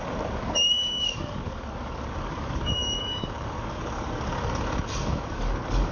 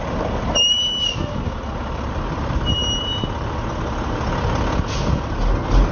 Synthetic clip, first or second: first